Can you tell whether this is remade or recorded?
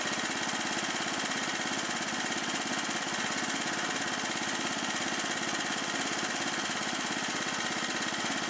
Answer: recorded